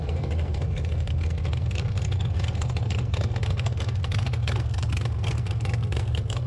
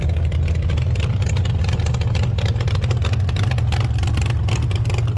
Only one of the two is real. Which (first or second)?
second